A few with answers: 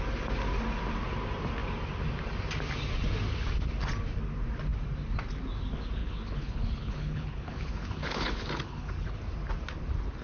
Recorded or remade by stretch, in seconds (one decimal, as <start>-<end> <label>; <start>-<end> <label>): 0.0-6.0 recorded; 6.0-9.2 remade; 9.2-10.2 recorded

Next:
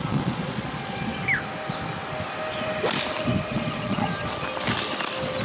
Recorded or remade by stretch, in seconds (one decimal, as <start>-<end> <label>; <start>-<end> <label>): 0.0-1.1 remade; 1.1-3.5 recorded; 3.5-4.1 remade; 4.1-5.4 recorded

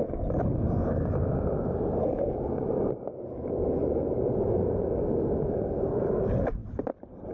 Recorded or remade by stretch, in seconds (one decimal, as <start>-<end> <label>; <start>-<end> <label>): 0.0-7.3 recorded